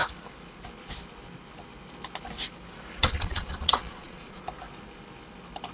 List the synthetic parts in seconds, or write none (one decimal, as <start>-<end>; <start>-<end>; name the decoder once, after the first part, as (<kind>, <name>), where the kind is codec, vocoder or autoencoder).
3.0-4.5 (vocoder, Vocos)